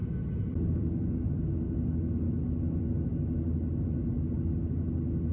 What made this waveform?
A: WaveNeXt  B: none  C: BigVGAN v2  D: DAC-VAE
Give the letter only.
B